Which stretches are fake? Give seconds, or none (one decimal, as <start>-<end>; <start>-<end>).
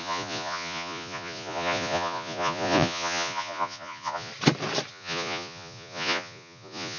0.0-4.3; 4.9-7.0